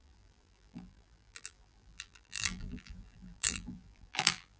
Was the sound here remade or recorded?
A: remade